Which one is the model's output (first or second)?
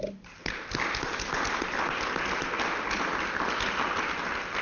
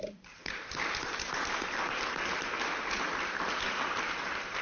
second